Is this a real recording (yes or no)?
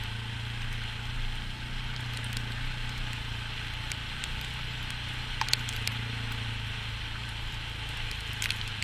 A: yes